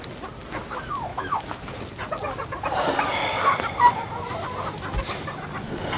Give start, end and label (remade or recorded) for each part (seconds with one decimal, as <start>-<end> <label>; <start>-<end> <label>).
0.0-1.1 recorded; 1.1-1.8 remade; 1.8-6.0 recorded